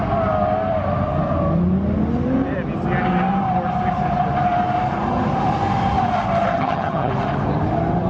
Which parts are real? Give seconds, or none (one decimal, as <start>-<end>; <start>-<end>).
0.0-6.5; 7.1-8.1